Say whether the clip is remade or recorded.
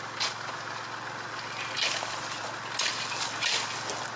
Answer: recorded